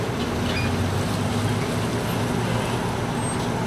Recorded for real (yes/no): yes